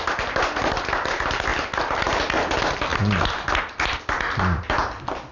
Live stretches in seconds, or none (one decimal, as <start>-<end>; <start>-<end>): 0.0-5.3